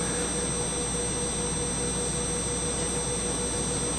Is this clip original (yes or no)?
yes